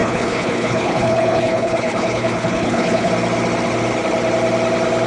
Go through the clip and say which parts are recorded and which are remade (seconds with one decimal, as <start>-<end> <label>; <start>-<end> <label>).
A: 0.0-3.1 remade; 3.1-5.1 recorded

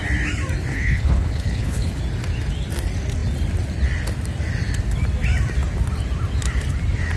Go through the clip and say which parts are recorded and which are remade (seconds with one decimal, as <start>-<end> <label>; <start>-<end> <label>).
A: 0.0-0.7 recorded; 0.7-2.0 remade; 2.0-7.2 recorded

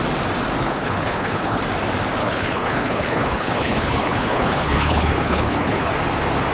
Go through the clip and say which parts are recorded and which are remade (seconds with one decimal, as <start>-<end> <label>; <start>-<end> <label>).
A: 0.0-0.6 recorded; 0.6-1.6 remade; 1.6-2.2 recorded; 2.2-5.9 remade; 5.9-6.5 recorded

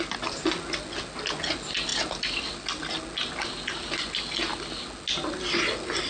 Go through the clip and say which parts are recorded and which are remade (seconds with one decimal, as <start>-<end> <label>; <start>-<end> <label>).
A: 0.0-6.1 recorded

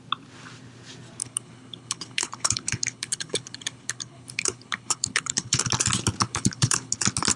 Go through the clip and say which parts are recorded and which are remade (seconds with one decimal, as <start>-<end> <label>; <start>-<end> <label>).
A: 0.0-1.2 recorded; 1.2-5.6 remade; 5.6-6.2 recorded; 6.2-6.9 remade; 6.9-7.4 recorded